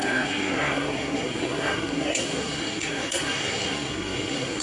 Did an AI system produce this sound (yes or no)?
yes